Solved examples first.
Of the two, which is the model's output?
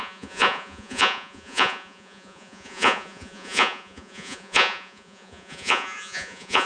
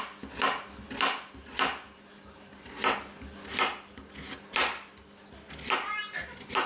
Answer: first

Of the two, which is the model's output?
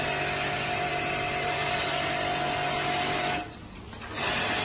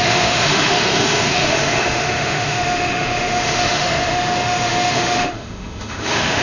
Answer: second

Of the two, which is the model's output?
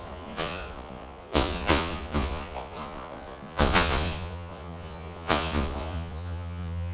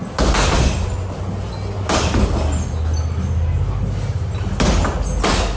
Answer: first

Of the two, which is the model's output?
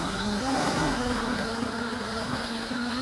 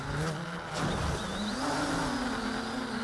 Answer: first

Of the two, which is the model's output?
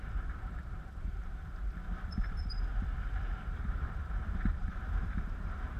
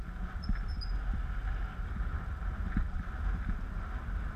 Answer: first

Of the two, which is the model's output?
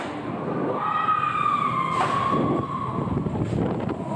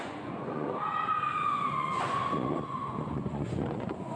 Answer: second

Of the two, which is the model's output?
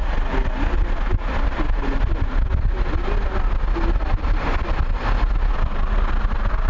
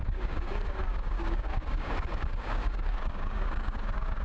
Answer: second